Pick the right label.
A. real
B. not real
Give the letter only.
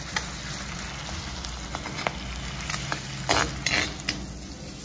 A